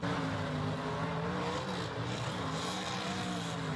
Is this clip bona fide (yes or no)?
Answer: yes